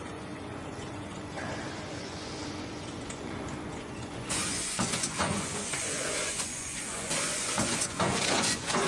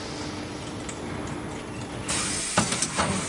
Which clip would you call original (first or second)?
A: second